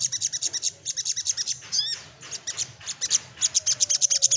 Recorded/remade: recorded